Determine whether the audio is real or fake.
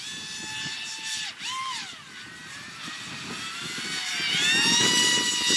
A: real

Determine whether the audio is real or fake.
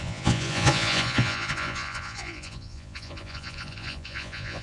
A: fake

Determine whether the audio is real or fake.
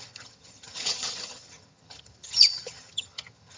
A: fake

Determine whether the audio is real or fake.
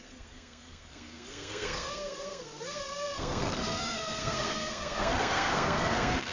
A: fake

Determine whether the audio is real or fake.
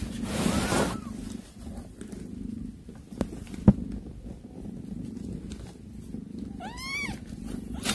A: real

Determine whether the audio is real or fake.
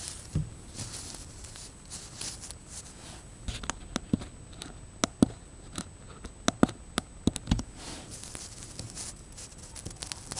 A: real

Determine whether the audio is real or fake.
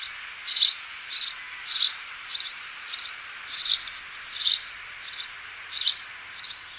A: real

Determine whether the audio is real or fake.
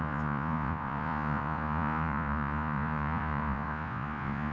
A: fake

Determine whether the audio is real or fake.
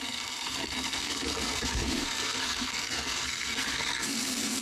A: fake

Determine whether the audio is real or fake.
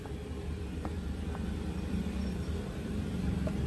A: fake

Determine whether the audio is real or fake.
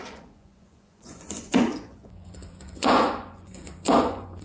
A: fake